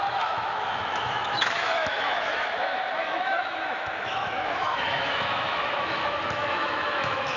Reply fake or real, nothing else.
fake